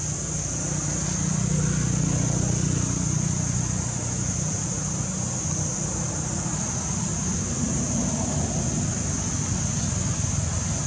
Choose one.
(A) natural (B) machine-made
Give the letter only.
A